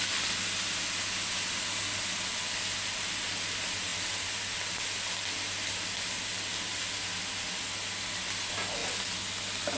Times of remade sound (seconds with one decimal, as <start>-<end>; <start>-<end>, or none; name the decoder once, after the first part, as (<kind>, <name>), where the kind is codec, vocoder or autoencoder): none